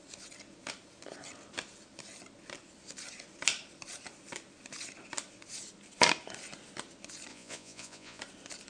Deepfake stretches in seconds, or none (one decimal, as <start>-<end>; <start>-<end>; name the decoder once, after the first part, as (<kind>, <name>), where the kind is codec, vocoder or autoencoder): 7.3-8.2 (vocoder, Vocos)